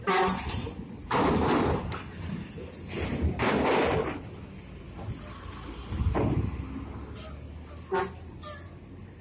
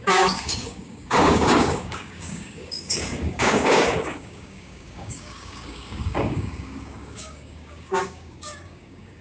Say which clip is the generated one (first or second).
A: second